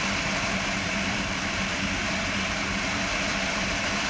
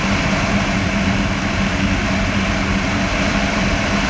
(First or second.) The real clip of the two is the second